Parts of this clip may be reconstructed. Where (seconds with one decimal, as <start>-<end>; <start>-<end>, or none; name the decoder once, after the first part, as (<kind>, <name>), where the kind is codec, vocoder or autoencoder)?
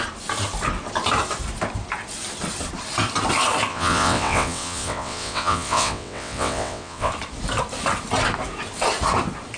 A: 3.7-7.1 (vocoder, WaveNeXt)